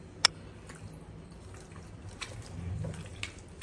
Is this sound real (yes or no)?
yes